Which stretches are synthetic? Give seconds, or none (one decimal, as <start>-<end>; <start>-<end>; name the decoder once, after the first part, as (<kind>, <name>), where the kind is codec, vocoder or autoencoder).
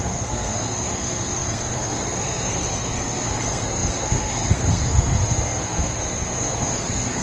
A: 0.0-7.2 (codec, SNAC)